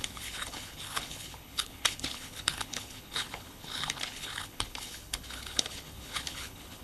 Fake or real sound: fake